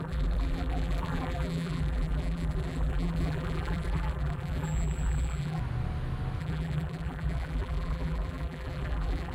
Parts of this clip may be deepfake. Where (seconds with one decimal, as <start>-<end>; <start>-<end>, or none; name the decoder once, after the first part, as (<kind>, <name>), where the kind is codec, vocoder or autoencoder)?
0.0-5.6 (vocoder, BigVGAN v2); 6.4-9.3